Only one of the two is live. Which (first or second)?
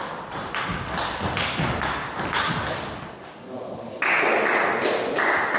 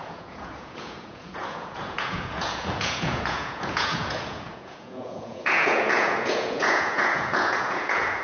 first